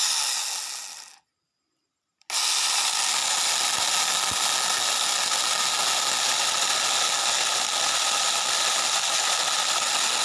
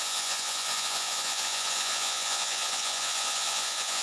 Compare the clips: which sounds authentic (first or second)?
first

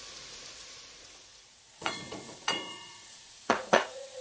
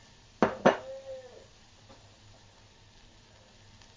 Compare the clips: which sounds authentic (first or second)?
second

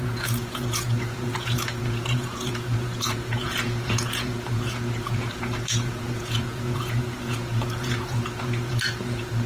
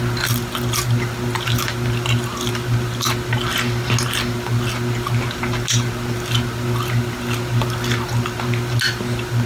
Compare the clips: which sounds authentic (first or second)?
second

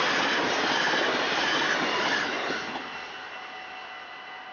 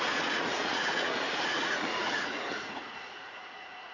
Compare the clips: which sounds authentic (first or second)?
first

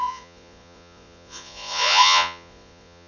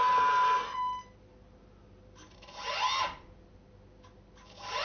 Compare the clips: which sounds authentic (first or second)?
second